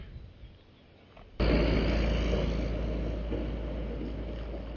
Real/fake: real